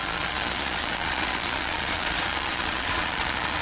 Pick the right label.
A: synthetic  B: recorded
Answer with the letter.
A